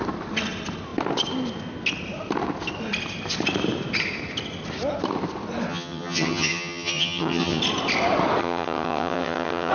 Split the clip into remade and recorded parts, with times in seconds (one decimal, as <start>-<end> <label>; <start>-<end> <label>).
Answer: 0.0-5.7 recorded; 5.7-7.6 remade; 7.6-8.4 recorded; 8.4-9.7 remade